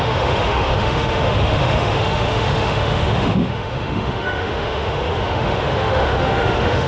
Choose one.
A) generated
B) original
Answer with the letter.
A